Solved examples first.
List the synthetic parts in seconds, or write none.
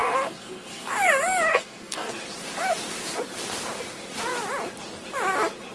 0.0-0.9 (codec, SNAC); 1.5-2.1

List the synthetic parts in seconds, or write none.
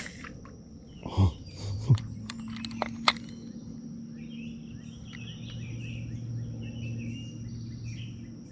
1.0-2.4 (vocoder, BigVGAN v2)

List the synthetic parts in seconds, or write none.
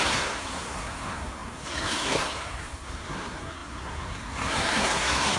0.0-5.4 (codec, SNAC)